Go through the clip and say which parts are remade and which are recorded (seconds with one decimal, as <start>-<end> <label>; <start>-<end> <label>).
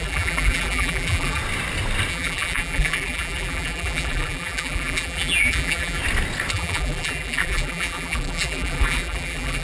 0.0-1.4 remade; 1.4-2.1 recorded; 2.1-6.0 remade; 6.0-6.5 recorded; 6.5-9.6 remade